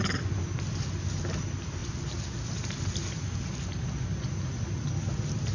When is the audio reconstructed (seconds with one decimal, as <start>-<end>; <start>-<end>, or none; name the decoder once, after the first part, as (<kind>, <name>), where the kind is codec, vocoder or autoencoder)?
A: none